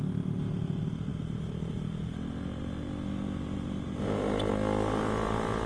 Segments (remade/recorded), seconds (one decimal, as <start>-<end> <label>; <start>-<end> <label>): 0.0-5.7 recorded